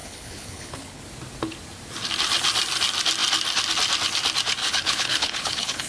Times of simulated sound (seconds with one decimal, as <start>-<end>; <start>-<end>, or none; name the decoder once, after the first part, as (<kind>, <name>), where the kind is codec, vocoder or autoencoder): 0.0-1.0 (codec, HILCodec); 4.6-5.9